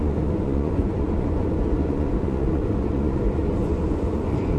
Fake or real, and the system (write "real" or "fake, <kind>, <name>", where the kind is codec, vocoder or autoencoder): fake, vocoder, Vocos